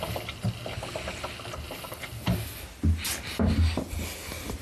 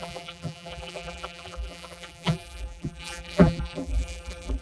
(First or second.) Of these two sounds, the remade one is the second